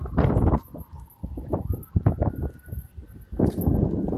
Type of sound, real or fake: real